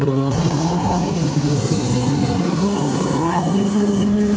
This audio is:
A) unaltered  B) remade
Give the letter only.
B